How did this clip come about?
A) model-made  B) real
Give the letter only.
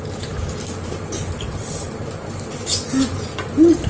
B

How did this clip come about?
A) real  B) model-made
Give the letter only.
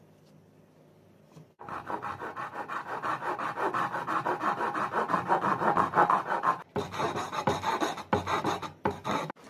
B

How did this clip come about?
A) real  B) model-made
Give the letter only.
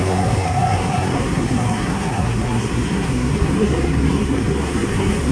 B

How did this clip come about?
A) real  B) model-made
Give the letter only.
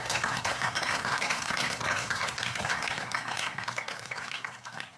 B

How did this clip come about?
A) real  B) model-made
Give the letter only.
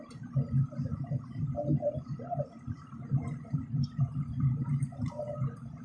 B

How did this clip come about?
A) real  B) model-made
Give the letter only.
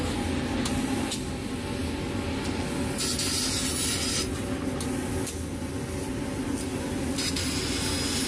A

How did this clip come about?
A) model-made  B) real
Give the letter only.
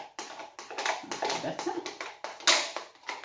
B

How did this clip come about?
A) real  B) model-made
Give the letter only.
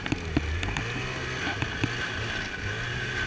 A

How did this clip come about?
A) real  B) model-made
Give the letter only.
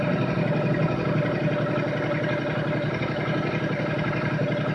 A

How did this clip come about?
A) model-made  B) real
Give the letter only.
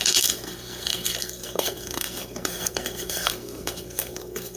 A